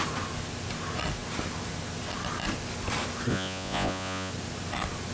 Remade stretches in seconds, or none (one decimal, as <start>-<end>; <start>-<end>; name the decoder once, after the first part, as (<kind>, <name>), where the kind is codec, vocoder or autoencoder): 3.3-4.3 (vocoder, Vocos)